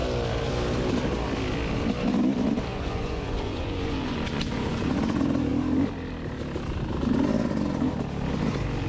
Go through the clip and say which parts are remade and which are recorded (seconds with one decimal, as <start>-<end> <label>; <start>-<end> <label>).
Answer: 0.0-2.7 recorded; 2.7-5.0 remade; 5.0-8.9 recorded

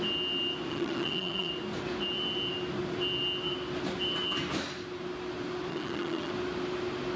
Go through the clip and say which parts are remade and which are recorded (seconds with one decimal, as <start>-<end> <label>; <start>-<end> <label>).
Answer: 0.0-0.7 recorded; 0.7-1.5 remade; 1.5-5.7 recorded; 5.7-6.3 remade; 6.3-7.2 recorded

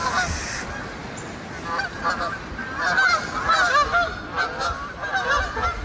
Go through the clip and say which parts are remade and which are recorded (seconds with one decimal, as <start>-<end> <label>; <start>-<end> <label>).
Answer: 0.0-5.8 recorded